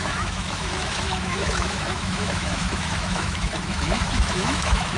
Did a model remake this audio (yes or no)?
yes